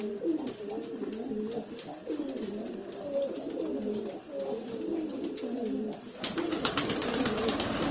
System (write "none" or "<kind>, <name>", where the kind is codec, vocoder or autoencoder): none